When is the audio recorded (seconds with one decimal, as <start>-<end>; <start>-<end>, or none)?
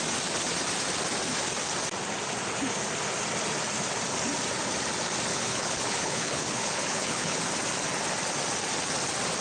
0.0-5.3; 7.5-9.4